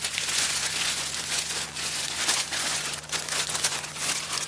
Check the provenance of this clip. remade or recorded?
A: remade